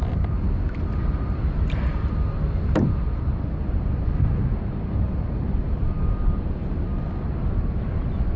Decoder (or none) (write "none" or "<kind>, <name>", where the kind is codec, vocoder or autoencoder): none